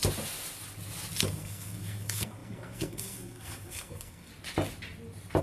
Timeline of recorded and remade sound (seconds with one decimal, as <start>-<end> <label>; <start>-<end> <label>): 0.0-1.2 recorded; 1.2-4.3 remade; 4.3-5.4 recorded